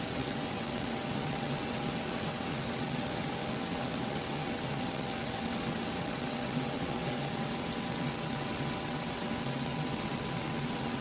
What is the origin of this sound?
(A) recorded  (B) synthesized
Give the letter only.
B